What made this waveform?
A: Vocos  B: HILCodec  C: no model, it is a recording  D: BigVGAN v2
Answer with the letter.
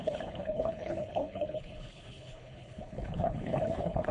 B